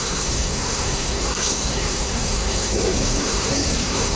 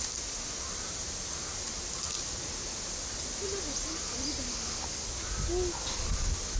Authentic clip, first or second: second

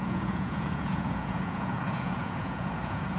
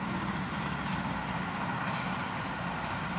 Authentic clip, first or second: second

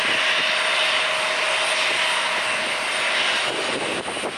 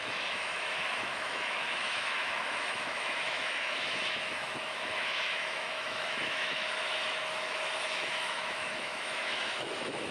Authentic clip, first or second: first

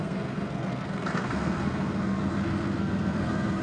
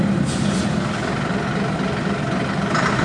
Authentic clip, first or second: second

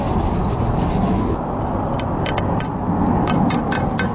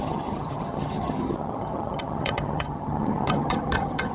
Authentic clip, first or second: first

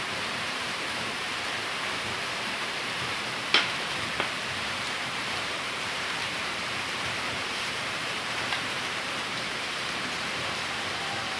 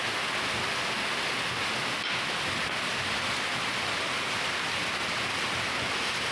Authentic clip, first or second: second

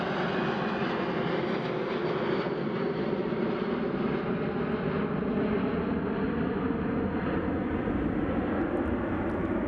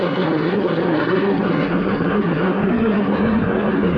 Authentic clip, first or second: first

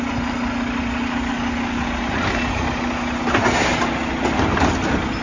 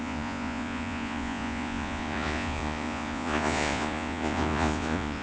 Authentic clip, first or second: first